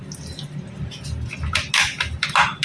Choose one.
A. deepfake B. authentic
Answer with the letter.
B